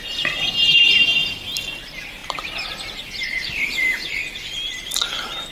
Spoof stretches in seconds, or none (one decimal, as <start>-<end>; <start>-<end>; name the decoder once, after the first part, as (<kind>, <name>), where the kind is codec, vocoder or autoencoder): 2.2-2.7 (vocoder, BigVGAN v2)